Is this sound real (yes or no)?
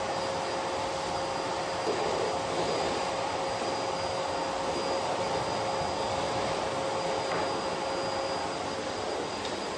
yes